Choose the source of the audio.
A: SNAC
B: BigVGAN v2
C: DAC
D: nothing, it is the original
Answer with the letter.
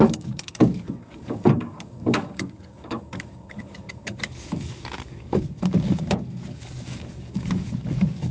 C